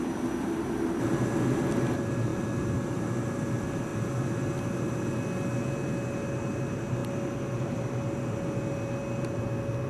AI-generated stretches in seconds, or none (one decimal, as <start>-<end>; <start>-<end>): none